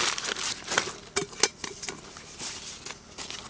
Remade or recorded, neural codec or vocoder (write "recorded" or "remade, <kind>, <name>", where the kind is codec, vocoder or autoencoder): recorded